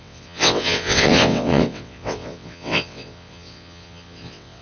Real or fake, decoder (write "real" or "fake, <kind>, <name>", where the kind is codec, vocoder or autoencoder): fake, vocoder, WaveNeXt